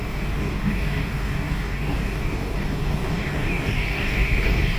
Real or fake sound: fake